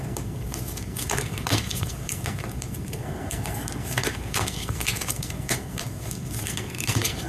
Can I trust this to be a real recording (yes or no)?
no